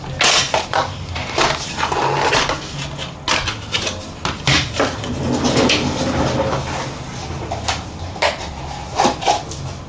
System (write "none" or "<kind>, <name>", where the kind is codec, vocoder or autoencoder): none